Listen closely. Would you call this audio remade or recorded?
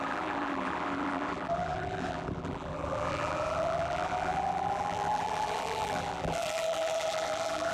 remade